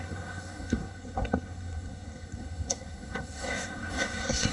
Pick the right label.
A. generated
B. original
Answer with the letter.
A